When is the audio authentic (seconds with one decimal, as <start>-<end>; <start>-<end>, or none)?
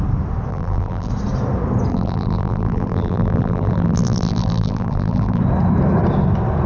0.0-0.5; 1.1-1.9; 5.4-6.7